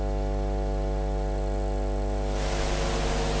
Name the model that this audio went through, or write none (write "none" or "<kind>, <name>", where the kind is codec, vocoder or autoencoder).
none